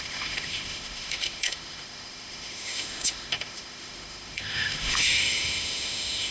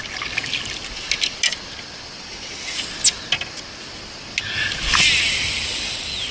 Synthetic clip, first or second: first